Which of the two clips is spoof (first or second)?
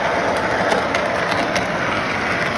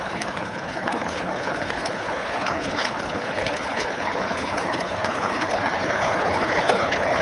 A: second